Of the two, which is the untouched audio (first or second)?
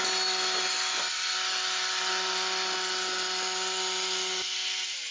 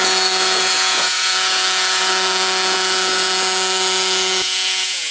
first